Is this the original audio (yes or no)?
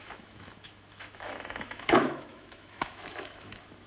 no